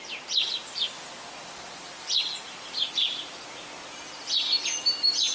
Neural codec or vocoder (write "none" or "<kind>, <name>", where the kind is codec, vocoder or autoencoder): none